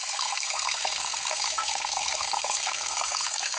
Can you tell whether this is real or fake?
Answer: fake